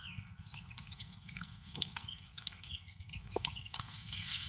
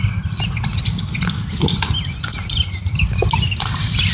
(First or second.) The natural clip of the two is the second